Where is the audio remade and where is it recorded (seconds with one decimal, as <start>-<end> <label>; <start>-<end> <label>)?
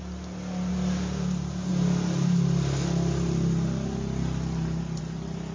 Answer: 0.0-5.5 recorded